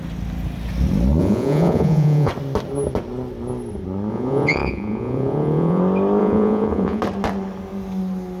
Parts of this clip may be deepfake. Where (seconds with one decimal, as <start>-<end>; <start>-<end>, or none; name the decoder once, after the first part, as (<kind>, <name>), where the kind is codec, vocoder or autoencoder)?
1.2-2.3 (vocoder, Vocos); 4.1-5.8; 6.2-7.0